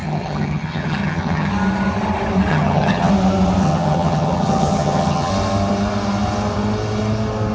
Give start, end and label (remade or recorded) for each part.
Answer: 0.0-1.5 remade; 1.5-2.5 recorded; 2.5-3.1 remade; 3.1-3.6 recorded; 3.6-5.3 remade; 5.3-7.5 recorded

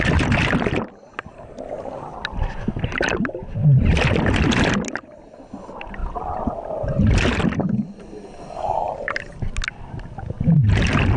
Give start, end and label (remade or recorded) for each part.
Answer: 0.0-11.2 recorded

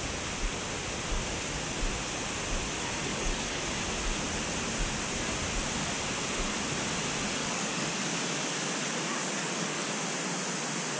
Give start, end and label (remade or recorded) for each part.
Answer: 0.0-3.1 recorded; 3.1-3.7 remade; 3.7-7.4 recorded; 7.4-8.0 remade; 8.0-9.2 recorded; 9.2-9.9 remade; 9.9-11.0 recorded

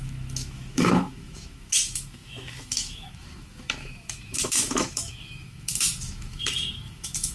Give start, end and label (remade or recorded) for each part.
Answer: 0.0-7.3 remade

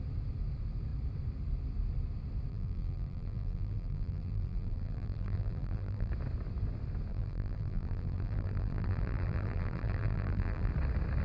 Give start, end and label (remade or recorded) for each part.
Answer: 0.0-2.5 recorded; 2.5-6.1 remade; 6.1-7.1 recorded; 7.1-10.7 remade; 10.7-11.2 recorded

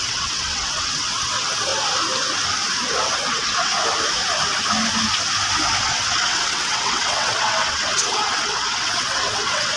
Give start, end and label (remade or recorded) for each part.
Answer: 0.0-1.7 remade; 1.7-3.1 recorded; 3.1-3.7 remade; 3.7-5.8 recorded; 5.8-9.8 remade

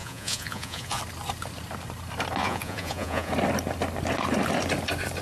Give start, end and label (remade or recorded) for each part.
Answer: 0.0-1.0 remade; 1.0-2.4 recorded; 2.4-3.3 remade; 3.3-5.2 recorded

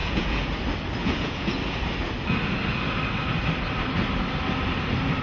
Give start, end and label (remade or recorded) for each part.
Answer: 0.0-0.5 remade; 0.5-1.0 recorded; 1.0-1.6 remade; 1.6-5.2 recorded